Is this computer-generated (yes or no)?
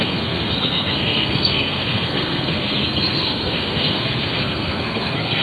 yes